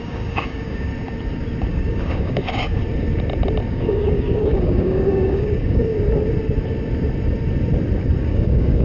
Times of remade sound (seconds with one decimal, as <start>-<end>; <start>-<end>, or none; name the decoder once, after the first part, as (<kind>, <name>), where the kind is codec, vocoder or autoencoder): 0.0-0.9 (codec, DAC); 1.7-2.8; 3.7-5.9; 8.2-8.8